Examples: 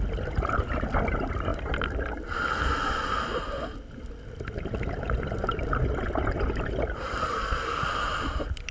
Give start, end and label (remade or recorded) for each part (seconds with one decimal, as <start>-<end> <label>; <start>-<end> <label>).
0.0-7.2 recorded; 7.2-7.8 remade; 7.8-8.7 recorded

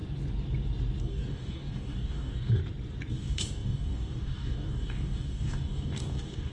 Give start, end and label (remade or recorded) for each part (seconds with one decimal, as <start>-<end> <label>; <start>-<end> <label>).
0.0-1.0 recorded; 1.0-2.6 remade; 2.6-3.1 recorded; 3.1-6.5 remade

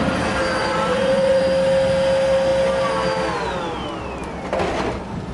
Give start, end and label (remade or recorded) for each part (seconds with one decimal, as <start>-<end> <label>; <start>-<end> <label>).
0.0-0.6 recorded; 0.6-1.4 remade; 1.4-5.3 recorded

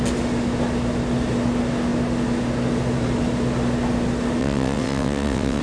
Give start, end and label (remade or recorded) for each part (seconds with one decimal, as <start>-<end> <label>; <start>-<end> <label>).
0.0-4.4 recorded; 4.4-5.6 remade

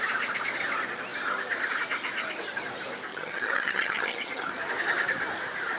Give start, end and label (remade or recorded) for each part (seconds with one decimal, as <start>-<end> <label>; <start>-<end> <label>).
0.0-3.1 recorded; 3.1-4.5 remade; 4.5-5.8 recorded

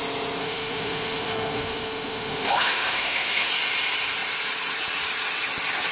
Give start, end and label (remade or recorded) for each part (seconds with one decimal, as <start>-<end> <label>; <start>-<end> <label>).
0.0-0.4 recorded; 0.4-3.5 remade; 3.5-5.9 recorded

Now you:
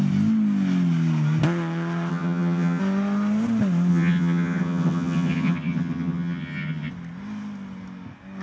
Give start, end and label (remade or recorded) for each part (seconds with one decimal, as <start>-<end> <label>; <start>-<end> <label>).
0.0-2.1 recorded; 2.1-2.8 remade; 2.8-3.9 recorded; 3.9-6.9 remade; 6.9-8.4 recorded